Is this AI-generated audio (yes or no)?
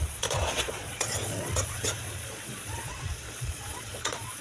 yes